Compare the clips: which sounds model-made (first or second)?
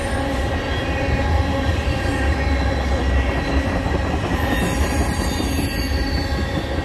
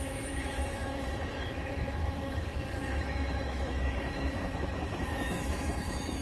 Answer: second